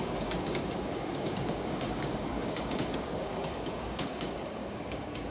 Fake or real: fake